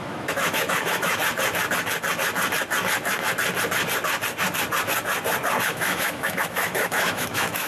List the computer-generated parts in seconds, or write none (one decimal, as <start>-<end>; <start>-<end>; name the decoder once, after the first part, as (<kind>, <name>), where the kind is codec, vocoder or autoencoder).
0.0-1.2 (autoencoder, DAC-VAE); 5.7-7.7